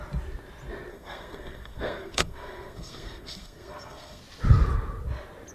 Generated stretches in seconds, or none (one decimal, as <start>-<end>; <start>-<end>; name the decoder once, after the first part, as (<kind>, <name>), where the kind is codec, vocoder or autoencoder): 0.9-4.2 (codec, SNAC)